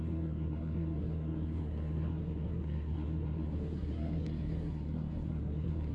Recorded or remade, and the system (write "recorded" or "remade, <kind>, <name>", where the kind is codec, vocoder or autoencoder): remade, codec, SNAC